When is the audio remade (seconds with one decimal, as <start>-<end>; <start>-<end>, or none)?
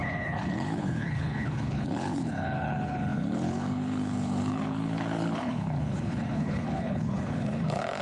0.0-8.0